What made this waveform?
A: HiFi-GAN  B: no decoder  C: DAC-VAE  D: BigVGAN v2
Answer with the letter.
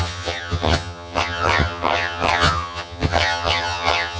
A